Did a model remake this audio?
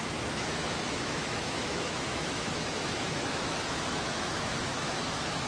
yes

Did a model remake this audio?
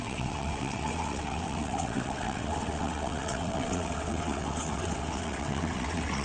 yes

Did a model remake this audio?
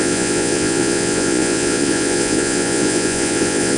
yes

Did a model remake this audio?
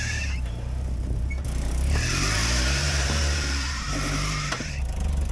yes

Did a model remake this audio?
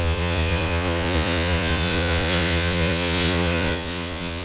yes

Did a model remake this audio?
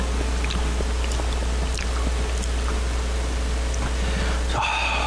no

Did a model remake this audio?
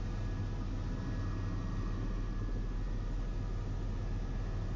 no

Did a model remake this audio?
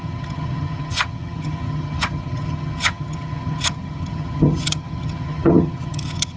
yes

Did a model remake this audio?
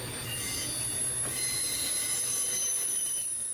no